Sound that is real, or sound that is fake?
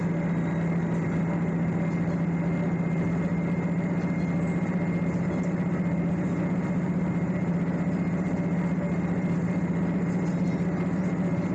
real